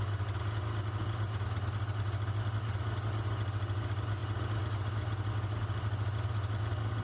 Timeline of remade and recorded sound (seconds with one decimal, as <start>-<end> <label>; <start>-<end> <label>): 0.0-7.0 recorded

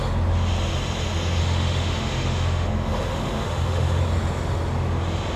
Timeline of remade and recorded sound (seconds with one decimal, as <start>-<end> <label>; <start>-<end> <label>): 0.0-1.4 recorded; 1.4-4.0 remade; 4.0-5.4 recorded

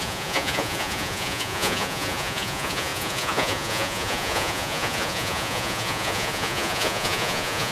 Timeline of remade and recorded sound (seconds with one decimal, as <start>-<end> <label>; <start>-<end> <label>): 0.0-7.7 remade

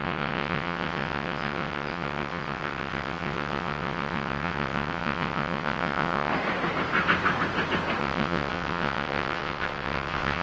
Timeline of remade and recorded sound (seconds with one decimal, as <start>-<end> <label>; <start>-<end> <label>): 0.0-6.3 remade; 6.3-8.0 recorded; 8.0-10.4 remade

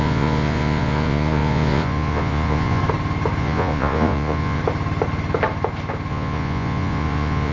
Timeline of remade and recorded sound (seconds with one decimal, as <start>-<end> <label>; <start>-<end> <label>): 0.0-2.8 remade; 2.8-3.4 recorded; 3.4-4.6 remade; 4.6-6.1 recorded; 6.1-7.5 remade

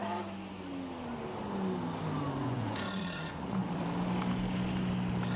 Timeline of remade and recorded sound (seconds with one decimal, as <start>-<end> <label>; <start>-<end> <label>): 0.0-2.4 recorded; 2.4-3.6 remade; 3.6-5.4 recorded